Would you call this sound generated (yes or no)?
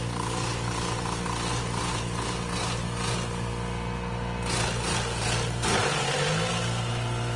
no